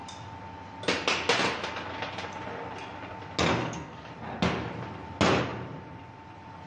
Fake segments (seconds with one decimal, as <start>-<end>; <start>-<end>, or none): 3.6-4.1